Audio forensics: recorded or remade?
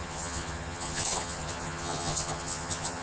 remade